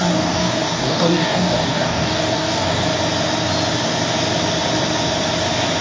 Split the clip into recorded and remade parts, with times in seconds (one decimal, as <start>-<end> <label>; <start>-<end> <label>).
0.0-2.9 remade; 2.9-5.8 recorded